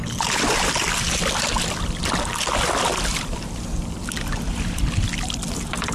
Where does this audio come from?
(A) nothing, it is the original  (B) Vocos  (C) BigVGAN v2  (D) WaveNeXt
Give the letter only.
A